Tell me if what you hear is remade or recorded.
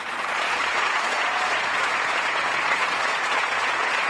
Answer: remade